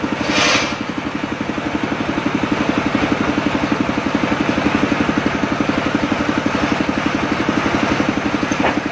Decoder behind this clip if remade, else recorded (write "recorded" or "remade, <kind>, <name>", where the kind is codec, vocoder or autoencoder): recorded